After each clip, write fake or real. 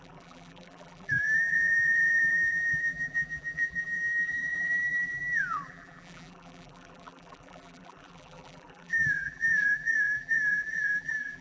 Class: fake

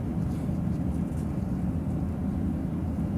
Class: fake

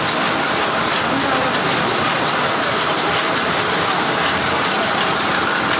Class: real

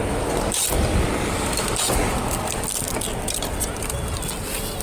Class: real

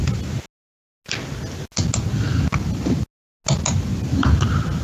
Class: real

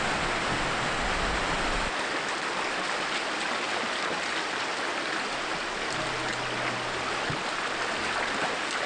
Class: real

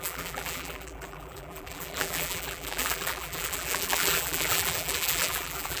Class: fake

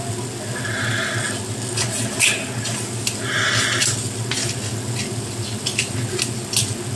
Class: real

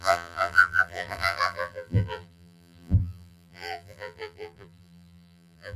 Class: fake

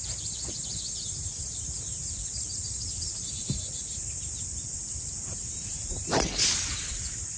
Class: real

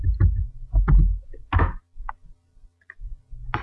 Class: real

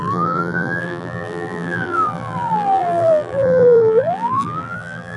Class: fake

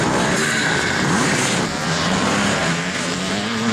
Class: fake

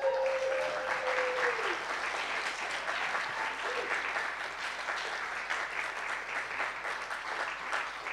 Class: fake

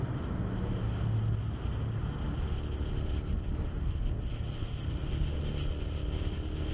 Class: real